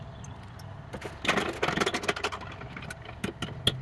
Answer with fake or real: real